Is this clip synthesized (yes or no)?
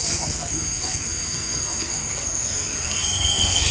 yes